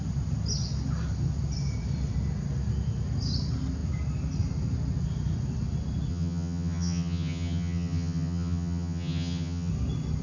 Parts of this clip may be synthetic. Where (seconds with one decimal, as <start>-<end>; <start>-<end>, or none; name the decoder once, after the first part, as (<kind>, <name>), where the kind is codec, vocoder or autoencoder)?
6.1-9.7 (vocoder, HiFi-GAN)

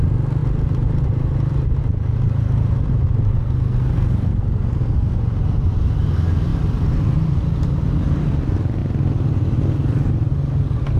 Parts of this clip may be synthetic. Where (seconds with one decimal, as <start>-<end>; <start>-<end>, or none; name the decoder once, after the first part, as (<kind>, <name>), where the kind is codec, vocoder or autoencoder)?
3.2-5.2 (codec, SNAC)

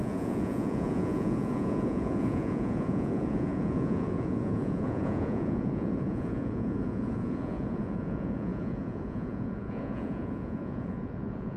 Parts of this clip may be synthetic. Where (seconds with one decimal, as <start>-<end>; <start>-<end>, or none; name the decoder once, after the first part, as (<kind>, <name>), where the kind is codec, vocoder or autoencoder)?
0.0-11.6 (vocoder, Vocos)